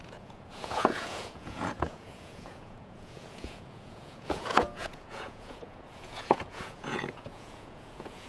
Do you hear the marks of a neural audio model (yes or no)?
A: yes